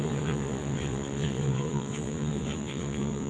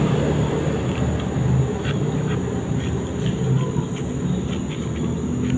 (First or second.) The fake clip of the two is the first